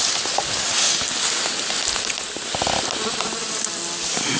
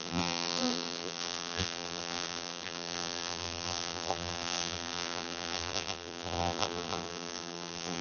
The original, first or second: first